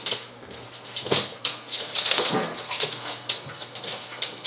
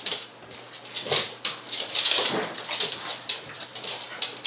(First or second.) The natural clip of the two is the second